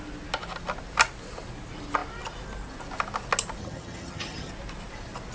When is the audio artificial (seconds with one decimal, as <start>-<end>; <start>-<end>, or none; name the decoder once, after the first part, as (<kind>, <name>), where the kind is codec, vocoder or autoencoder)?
3.6-4.5 (vocoder, HiFi-GAN)